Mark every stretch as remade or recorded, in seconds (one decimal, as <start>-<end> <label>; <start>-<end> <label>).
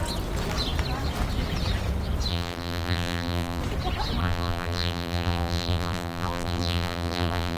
0.0-2.3 recorded; 2.3-3.6 remade; 3.6-4.2 recorded; 4.2-7.6 remade